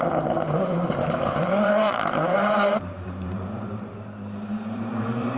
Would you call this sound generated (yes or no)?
yes